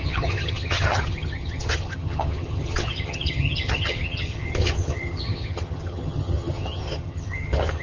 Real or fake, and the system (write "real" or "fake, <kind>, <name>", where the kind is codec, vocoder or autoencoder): fake, vocoder, HiFi-GAN